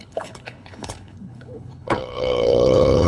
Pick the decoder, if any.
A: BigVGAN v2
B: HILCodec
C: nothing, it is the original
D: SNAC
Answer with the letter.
B